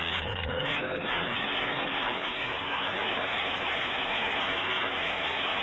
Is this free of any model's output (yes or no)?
no